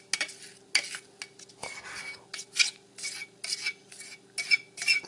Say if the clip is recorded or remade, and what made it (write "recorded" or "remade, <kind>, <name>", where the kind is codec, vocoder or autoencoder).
recorded